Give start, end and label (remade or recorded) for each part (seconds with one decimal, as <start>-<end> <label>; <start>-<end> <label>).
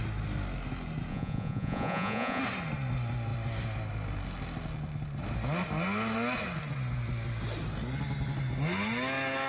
0.0-1.1 recorded; 1.1-2.4 remade; 2.4-9.5 recorded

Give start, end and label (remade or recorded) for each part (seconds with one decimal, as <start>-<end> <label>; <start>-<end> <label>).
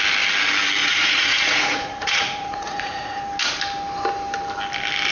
0.0-0.8 recorded; 0.8-3.2 remade; 3.2-5.1 recorded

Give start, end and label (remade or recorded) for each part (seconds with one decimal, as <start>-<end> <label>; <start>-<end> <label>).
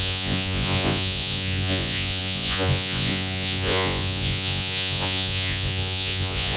0.0-6.6 remade